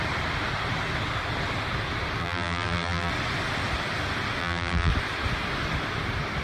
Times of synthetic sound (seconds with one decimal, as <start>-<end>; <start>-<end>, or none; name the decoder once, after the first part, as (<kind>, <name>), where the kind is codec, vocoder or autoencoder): 2.2-3.1 (vocoder, BigVGAN v2); 4.4-4.9